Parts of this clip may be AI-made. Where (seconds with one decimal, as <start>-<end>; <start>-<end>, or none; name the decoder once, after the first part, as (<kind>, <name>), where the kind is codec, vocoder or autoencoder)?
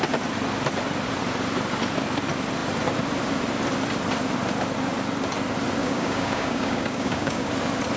5.8-7.5 (codec, DAC)